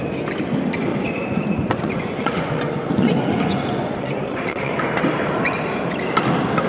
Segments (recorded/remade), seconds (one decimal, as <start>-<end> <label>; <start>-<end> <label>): 0.0-0.9 recorded; 0.9-4.9 remade; 4.9-6.7 recorded